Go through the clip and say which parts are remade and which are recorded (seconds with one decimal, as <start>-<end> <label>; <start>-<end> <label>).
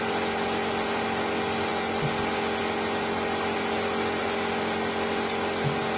0.0-6.0 recorded